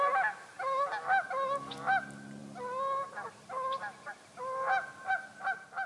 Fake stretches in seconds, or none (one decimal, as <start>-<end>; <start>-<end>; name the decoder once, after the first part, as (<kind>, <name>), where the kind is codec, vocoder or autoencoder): none